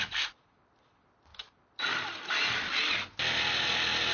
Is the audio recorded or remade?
recorded